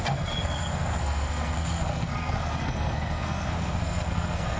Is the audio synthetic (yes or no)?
yes